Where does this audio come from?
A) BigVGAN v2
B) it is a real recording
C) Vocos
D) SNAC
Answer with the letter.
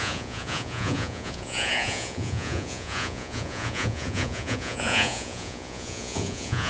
C